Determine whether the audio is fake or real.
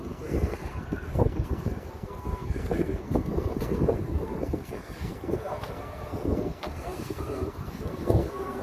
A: fake